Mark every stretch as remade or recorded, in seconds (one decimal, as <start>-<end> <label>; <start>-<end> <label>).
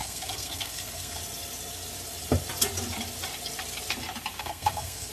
0.0-1.2 remade; 1.2-4.4 recorded; 4.4-5.1 remade